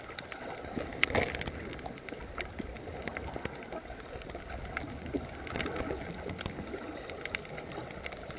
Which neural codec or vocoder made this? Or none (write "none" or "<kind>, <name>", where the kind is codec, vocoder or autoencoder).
none